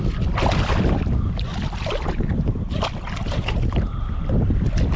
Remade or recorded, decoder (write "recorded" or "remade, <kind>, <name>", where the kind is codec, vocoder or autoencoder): recorded